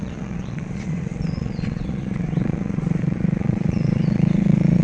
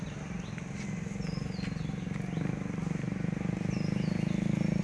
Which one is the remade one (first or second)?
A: first